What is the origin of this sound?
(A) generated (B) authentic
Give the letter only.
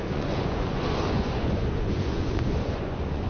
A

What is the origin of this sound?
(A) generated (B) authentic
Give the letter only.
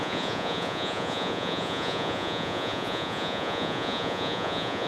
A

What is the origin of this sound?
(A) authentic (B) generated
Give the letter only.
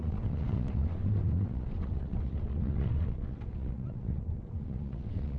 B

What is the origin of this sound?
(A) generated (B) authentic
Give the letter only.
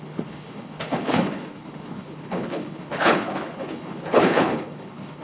A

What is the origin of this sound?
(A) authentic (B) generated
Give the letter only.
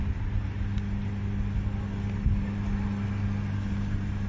A